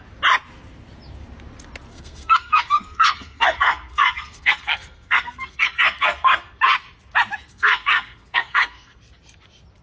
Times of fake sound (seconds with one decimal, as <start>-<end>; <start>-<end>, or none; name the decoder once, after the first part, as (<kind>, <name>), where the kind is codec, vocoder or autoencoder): 1.9-6.6 (codec, SNAC); 7.5-9.0